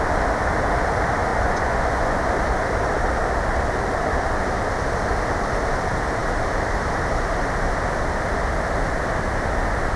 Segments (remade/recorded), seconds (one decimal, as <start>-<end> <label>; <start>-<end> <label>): 0.0-1.3 recorded; 1.3-2.2 remade; 2.2-10.0 recorded